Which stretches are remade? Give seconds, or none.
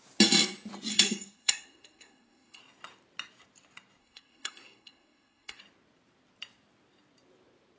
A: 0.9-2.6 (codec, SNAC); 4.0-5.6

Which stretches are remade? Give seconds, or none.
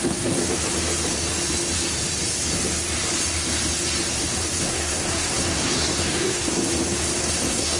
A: 0.0-0.4 (codec, SNAC); 4.6-6.6; 7.2-7.8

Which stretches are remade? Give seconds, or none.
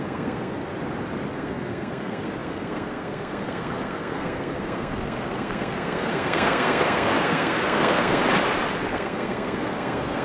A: 0.0-0.7 (codec, SNAC); 1.3-8.2; 8.9-10.2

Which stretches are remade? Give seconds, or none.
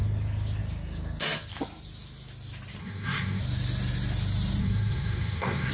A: 2.8-3.4 (codec, SNAC); 4.6-5.7